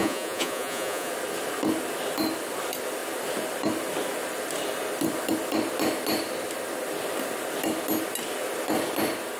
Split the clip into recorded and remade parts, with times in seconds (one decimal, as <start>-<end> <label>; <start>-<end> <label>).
0.0-1.1 remade; 1.1-9.4 recorded